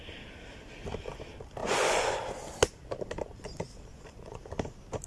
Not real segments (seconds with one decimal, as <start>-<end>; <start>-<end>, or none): 1.6-2.2; 3.9-4.4